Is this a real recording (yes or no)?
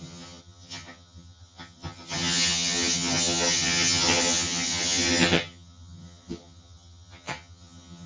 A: no